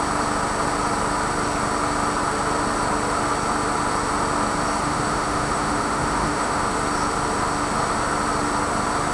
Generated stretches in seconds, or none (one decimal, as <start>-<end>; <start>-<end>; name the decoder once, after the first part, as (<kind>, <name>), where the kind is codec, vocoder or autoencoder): 4.8-6.6 (autoencoder, DAC-VAE)